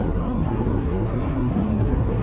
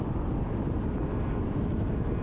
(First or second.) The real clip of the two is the second